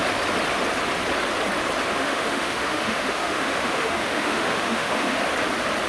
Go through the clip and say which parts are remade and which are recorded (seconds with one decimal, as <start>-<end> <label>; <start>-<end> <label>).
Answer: 0.0-1.9 recorded; 1.9-5.2 remade; 5.2-5.9 recorded